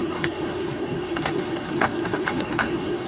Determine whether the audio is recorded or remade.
remade